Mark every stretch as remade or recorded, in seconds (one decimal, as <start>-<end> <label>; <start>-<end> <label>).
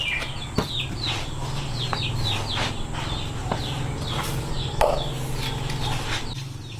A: 0.0-3.4 recorded; 3.4-4.7 remade; 4.7-6.8 recorded